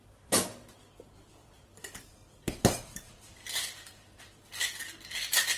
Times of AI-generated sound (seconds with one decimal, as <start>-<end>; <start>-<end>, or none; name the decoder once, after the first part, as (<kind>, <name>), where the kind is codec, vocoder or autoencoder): 1.4-4.8 (vocoder, BigVGAN v2)

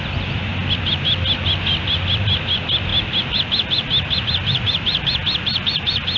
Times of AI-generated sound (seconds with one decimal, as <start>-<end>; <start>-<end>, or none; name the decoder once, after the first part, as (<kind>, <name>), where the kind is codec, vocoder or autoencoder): none